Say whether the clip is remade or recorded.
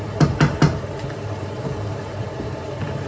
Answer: remade